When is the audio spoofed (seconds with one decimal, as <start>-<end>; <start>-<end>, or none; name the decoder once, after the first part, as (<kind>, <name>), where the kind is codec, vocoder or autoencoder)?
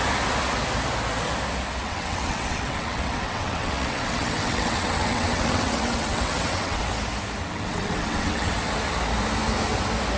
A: 1.8-6.8 (vocoder, WaveNeXt); 7.4-8.5